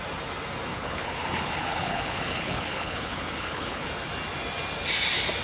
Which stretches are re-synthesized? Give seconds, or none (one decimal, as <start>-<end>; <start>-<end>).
0.7-3.9